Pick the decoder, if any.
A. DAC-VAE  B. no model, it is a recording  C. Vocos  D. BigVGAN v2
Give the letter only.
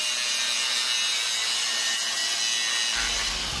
B